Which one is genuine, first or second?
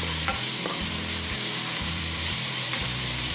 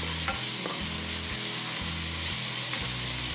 second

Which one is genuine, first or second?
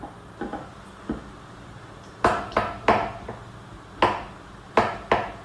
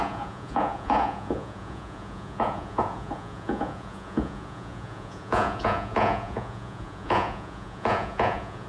first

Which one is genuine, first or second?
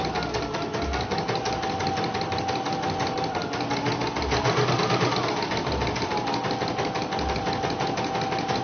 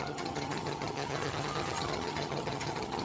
first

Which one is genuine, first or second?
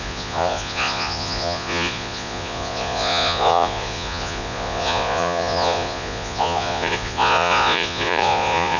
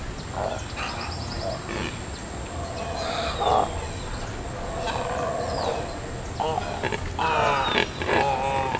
second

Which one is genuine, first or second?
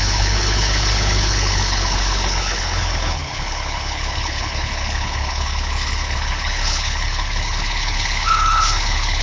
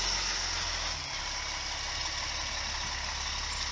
second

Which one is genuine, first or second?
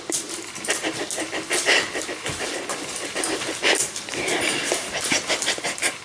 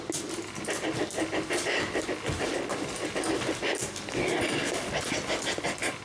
second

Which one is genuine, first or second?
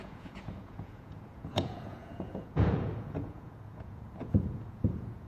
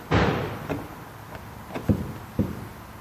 second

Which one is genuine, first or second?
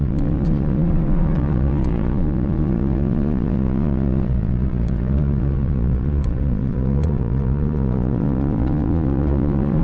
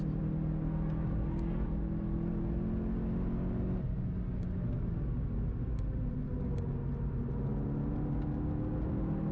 second